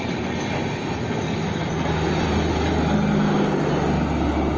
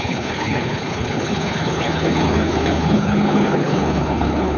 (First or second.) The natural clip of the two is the first